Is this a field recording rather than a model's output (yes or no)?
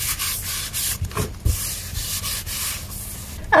yes